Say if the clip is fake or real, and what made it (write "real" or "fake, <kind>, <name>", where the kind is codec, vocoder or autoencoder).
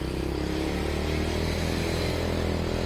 real